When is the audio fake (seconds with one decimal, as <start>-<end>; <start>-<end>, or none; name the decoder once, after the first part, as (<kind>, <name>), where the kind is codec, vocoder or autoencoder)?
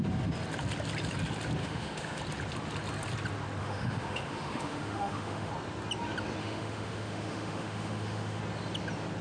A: 1.6-2.2 (autoencoder, DAC-VAE); 3.6-5.5; 6.4-8.4